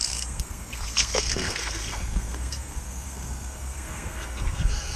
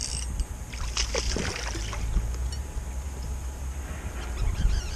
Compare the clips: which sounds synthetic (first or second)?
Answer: first